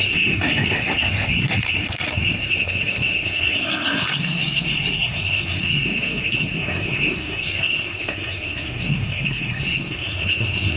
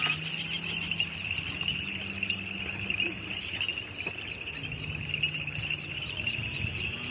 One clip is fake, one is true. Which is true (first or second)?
second